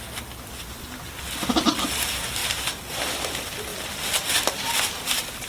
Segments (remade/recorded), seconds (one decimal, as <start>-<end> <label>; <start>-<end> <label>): 0.0-5.5 recorded